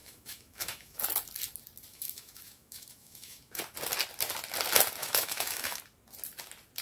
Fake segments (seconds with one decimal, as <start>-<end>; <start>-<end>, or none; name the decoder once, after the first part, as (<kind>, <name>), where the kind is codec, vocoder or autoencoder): 0.0-1.0 (autoencoder, DAC-VAE); 1.9-3.6; 5.0-5.8